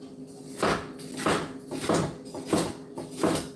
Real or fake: real